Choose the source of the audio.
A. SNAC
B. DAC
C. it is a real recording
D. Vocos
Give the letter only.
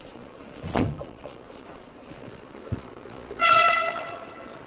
D